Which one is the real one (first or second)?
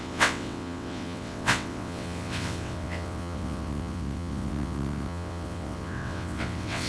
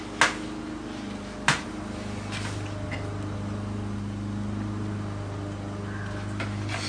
second